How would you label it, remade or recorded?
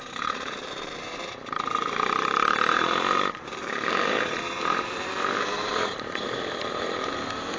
remade